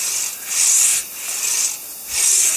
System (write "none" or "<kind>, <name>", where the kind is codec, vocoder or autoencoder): none